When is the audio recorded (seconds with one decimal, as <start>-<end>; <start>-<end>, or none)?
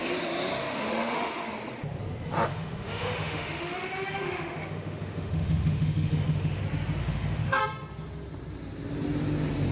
0.0-0.6; 1.5-2.5; 6.6-7.0; 7.6-9.7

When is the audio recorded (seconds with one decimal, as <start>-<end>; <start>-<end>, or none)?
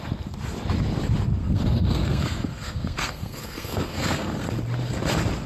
0.0-1.4; 4.5-5.5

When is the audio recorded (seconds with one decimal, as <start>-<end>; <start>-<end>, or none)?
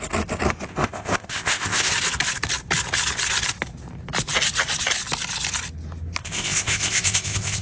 0.0-0.7; 1.9-6.2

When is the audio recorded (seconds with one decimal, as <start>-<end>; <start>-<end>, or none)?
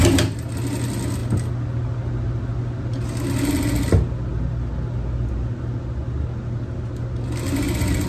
0.0-8.1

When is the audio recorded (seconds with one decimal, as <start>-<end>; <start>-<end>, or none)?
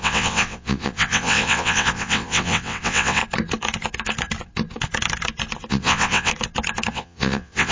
3.2-5.7; 6.3-6.9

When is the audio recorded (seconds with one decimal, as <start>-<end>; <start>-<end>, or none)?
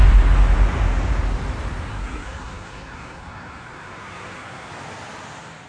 0.0-1.9; 4.7-5.7